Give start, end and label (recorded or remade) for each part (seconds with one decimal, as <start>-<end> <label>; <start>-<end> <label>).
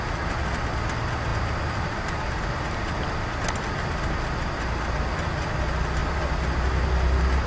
0.0-6.0 recorded; 6.0-6.7 remade; 6.7-7.5 recorded